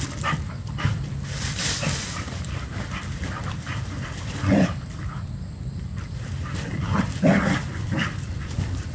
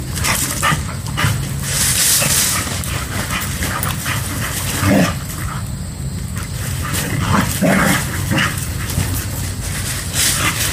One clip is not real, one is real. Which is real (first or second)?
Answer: second